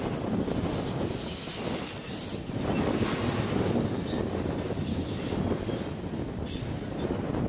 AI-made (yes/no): no